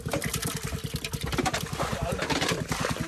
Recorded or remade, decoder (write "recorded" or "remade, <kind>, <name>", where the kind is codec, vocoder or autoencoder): remade, vocoder, BigVGAN v2